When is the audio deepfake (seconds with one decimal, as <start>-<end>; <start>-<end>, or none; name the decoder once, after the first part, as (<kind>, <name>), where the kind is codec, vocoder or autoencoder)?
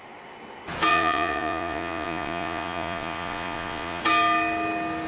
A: 0.9-4.0 (vocoder, Vocos)